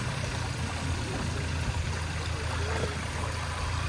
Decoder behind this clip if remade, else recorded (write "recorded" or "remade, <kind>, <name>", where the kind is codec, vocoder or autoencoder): recorded